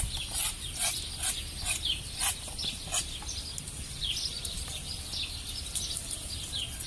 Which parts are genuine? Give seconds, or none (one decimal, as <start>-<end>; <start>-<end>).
0.0-6.9